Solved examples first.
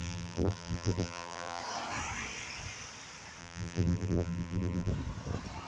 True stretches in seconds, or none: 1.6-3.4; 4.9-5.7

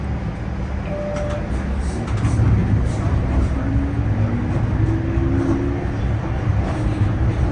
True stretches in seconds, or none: 0.0-2.6; 3.7-6.5

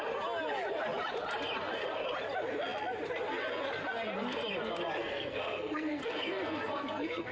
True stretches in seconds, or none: 0.0-5.0

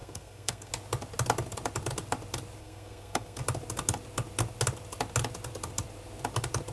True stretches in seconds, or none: 0.7-2.6; 3.4-6.7

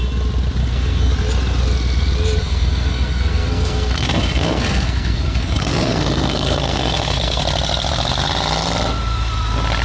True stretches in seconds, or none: 0.0-0.6; 1.1-2.4; 7.4-9.8

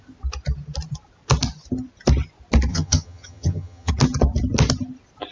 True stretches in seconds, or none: 0.0-2.7; 3.9-5.3

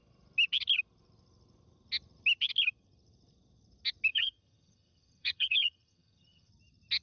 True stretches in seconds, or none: 0.0-4.1; 6.5-7.0